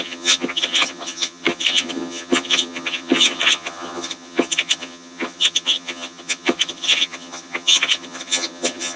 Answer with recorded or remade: remade